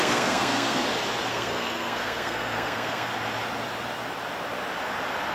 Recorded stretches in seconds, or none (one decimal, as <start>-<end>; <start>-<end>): 0.8-1.3; 3.1-5.3